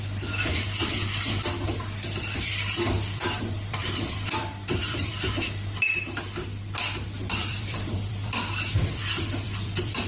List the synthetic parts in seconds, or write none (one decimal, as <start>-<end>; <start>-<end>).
0.5-5.3; 7.4-10.1